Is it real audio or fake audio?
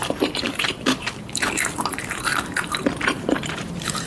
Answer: fake